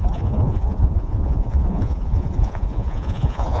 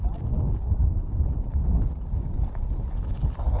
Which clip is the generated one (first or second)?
first